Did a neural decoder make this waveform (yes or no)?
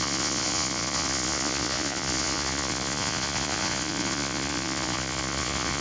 yes